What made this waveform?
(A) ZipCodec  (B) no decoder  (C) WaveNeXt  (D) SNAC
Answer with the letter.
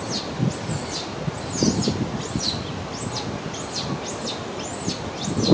B